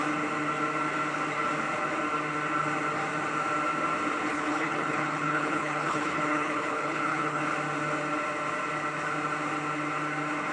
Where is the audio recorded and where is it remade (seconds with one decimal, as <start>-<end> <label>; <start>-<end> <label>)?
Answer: 0.0-4.3 recorded; 4.3-7.4 remade; 7.4-10.5 recorded